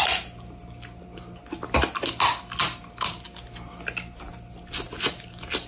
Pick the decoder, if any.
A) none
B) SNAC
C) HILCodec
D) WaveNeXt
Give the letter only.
A